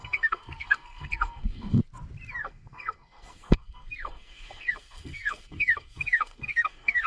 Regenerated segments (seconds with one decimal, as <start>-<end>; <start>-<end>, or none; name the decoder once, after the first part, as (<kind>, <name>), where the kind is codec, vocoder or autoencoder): 0.0-1.8 (codec, SNAC); 2.4-7.1